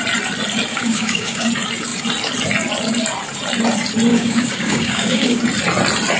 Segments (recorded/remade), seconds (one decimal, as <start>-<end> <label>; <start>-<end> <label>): 0.0-0.7 recorded; 0.7-1.5 remade; 1.5-4.1 recorded; 4.1-5.4 remade; 5.4-6.2 recorded

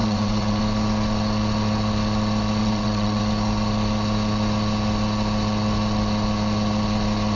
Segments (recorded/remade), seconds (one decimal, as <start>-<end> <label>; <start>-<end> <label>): 0.0-0.6 remade; 0.6-2.6 recorded; 2.6-3.2 remade; 3.2-7.4 recorded

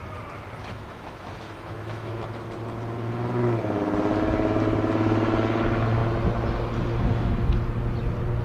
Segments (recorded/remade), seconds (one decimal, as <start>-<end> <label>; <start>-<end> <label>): 0.0-0.6 recorded; 0.6-2.2 remade; 2.2-8.4 recorded

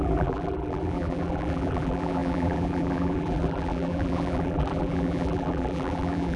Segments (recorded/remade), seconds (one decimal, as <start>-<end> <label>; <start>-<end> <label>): 0.0-6.4 remade

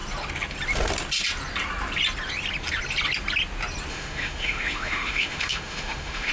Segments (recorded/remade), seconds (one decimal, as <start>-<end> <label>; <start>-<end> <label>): 0.0-3.9 recorded; 3.9-6.3 remade

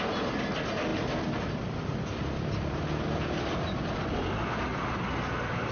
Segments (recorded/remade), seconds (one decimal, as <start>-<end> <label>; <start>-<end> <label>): 0.0-5.7 recorded

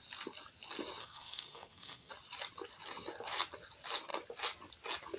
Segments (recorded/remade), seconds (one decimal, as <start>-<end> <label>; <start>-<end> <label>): 0.0-1.0 recorded; 1.0-2.1 remade; 2.1-5.2 recorded

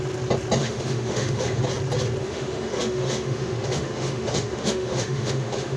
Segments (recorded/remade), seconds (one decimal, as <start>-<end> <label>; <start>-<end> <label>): 0.0-0.6 recorded; 0.6-1.6 remade; 1.6-2.2 recorded; 2.2-5.8 remade